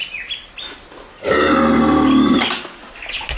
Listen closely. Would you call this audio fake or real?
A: real